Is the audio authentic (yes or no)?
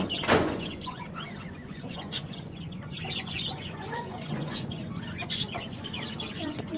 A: no